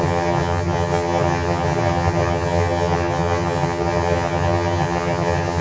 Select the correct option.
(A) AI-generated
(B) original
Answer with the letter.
A